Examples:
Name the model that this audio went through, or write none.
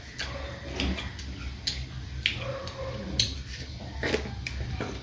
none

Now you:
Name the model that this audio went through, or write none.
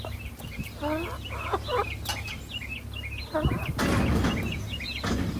none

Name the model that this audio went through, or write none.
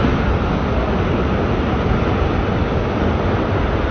none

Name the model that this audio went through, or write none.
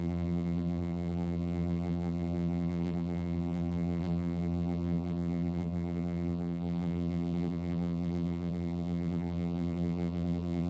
vocoder, BigVGAN v2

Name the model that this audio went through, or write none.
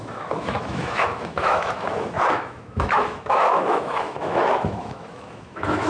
autoencoder, DAC-VAE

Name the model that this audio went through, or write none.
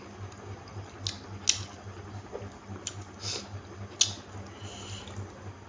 none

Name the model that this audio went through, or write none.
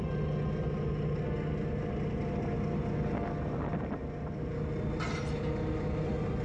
none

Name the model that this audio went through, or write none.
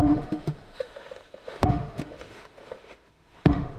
autoencoder, DAC-VAE